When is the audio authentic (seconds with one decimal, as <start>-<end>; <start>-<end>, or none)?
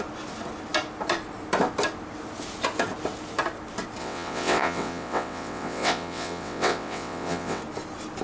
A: 0.0-4.0; 7.6-8.2